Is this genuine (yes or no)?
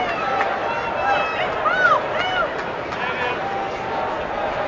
yes